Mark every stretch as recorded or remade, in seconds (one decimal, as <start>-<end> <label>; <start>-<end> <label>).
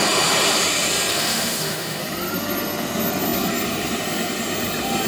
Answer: 0.0-1.1 recorded; 1.1-2.0 remade; 2.0-5.1 recorded